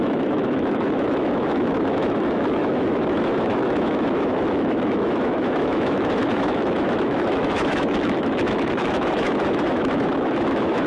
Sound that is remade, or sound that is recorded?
remade